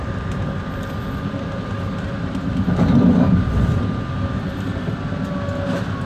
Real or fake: real